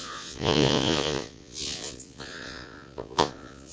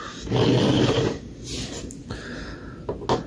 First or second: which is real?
second